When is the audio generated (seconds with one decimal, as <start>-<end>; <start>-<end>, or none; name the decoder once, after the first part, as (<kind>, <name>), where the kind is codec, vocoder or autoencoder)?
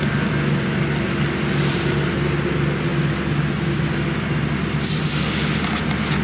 none